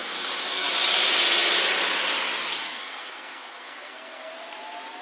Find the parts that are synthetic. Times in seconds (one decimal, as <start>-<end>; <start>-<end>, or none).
0.0-0.7; 2.5-4.3